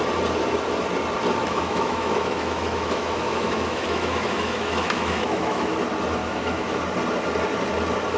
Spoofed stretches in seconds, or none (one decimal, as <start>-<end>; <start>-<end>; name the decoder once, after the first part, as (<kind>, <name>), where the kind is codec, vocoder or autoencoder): 1.4-5.8 (autoencoder, DAC-VAE); 6.2-6.8

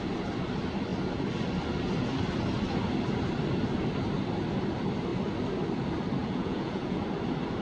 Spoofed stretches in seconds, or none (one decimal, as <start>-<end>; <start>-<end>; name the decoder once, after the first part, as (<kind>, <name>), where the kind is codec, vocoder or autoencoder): 6.2-7.0 (vocoder, Vocos)